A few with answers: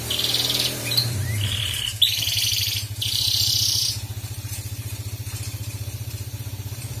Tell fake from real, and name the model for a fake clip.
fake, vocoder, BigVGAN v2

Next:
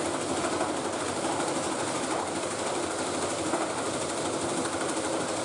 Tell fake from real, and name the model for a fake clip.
fake, vocoder, BigVGAN v2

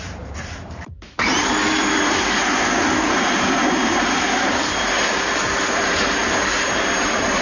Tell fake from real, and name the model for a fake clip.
fake, vocoder, BigVGAN v2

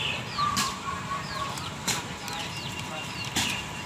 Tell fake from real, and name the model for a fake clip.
fake, vocoder, BigVGAN v2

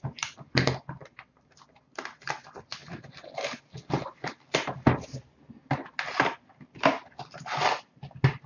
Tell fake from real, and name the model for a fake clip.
real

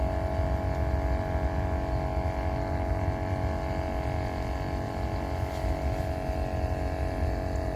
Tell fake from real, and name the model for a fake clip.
real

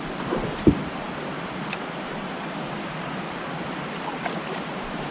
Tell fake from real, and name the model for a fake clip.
fake, vocoder, BigVGAN v2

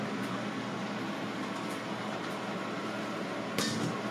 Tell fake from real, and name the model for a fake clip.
real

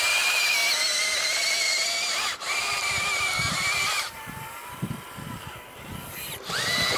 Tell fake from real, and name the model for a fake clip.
fake, vocoder, BigVGAN v2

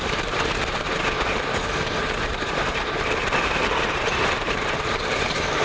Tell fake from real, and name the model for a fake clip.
fake, vocoder, BigVGAN v2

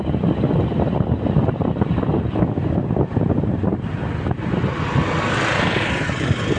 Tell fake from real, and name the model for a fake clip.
real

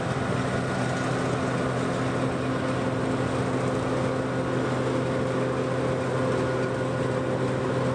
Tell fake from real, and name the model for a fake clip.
real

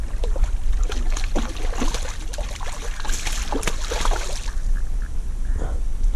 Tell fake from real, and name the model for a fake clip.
real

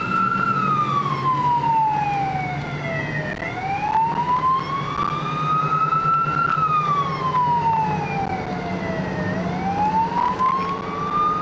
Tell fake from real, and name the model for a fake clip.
real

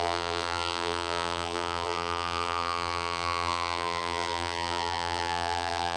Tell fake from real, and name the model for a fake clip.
fake, vocoder, BigVGAN v2